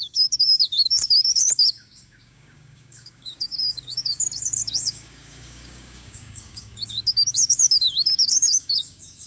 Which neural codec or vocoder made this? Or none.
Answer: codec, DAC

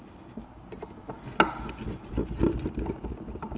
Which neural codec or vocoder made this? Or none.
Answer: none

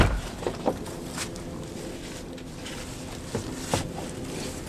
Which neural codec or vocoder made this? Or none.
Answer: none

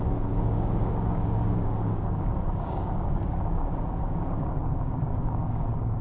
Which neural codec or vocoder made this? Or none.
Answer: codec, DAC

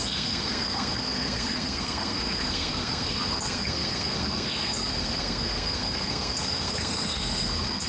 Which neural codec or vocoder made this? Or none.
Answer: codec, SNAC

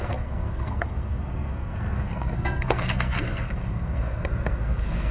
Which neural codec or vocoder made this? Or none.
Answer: codec, SNAC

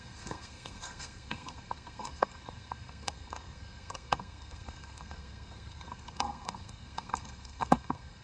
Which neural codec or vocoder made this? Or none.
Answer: codec, SNAC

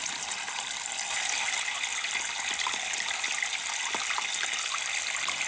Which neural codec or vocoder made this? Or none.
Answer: none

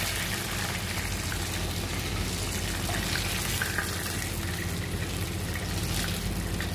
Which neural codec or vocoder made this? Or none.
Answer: none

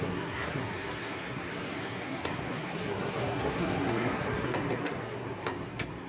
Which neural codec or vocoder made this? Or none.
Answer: codec, SNAC